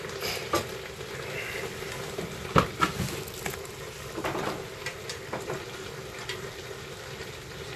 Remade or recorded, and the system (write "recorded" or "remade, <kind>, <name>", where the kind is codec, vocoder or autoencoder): recorded